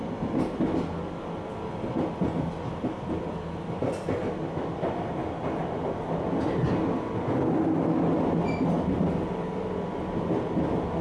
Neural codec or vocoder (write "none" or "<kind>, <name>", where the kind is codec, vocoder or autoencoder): none